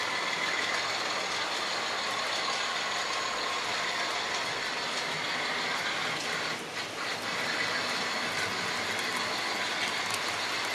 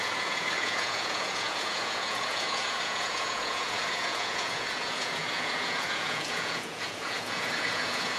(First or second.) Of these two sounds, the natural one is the first